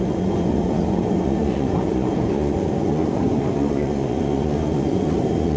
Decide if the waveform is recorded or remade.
remade